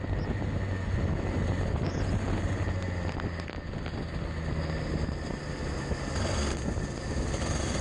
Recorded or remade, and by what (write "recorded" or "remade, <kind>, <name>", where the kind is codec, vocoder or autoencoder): recorded